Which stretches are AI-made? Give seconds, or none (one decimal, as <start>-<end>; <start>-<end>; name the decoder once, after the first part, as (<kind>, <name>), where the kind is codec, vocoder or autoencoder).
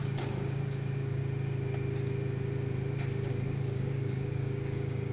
0.0-1.2 (codec, DAC); 3.3-5.1